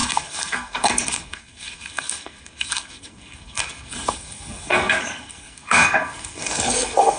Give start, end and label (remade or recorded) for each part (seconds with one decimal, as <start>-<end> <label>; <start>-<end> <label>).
0.0-7.2 remade